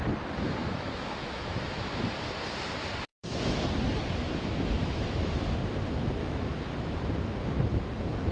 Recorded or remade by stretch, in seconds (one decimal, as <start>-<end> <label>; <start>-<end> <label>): 0.0-0.6 recorded; 0.6-1.9 remade; 1.9-3.1 recorded; 3.1-3.7 remade; 3.7-4.8 recorded; 4.8-5.3 remade; 5.3-6.2 recorded; 6.2-7.1 remade; 7.1-8.3 recorded